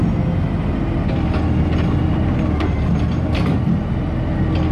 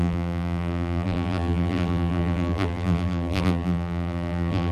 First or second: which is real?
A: first